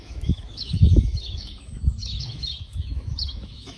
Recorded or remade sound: remade